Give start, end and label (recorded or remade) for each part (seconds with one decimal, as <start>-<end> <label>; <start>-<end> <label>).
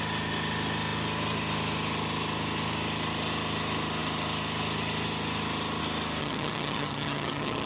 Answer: 0.0-6.2 recorded; 6.2-7.7 remade